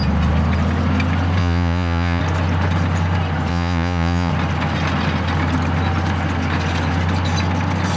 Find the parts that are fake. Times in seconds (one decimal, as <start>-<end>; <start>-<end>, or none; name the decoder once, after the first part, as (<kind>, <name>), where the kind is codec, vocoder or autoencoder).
1.4-2.2 (vocoder, Vocos); 3.5-4.3

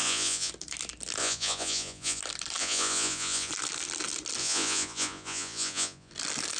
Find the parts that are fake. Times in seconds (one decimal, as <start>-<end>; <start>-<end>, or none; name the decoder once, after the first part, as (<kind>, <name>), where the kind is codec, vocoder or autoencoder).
0.0-0.5 (vocoder, Vocos); 1.2-2.2; 2.6-3.5; 4.4-6.1

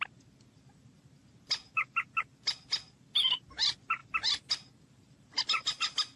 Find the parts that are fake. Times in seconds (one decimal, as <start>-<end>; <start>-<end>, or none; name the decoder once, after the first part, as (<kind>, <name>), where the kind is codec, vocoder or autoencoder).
4.0-4.5 (vocoder, BigVGAN v2)

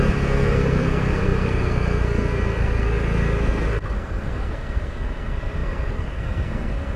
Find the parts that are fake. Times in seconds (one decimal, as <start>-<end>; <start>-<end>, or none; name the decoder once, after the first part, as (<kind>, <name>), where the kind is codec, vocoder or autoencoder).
0.0-7.0 (codec, SNAC)

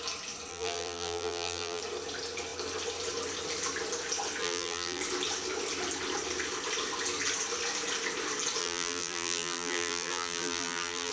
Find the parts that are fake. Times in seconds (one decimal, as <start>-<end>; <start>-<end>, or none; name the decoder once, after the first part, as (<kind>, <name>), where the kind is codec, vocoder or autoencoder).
0.5-1.8 (vocoder, BigVGAN v2); 4.4-5.0; 8.6-11.1